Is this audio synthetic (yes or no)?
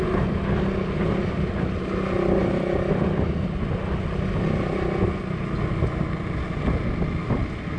no